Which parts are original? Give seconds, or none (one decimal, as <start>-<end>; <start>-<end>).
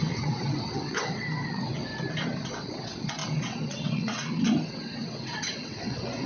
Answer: 1.9-2.5